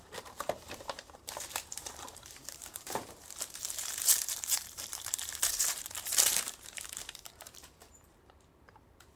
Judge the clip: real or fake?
fake